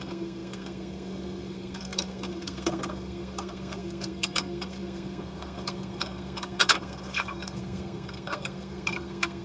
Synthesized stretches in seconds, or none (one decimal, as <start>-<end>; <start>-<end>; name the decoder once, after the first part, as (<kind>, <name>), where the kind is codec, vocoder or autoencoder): 0.0-9.4 (codec, SNAC)